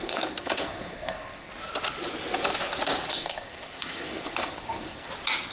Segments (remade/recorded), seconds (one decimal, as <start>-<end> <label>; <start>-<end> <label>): 0.0-1.5 remade; 1.5-3.1 recorded; 3.1-5.1 remade; 5.1-5.5 recorded